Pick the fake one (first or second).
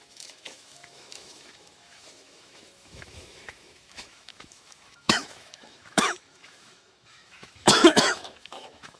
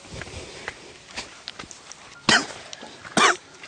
first